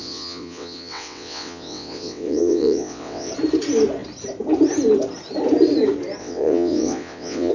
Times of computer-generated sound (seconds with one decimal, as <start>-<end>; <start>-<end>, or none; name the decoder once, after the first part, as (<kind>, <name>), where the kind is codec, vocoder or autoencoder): 0.0-3.3 (vocoder, WaveNeXt); 6.2-7.5